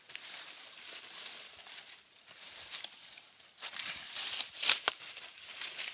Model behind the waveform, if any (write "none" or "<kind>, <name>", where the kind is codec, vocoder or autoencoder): vocoder, BigVGAN v2